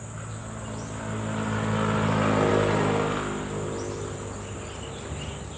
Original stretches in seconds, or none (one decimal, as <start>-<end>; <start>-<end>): 0.0-5.6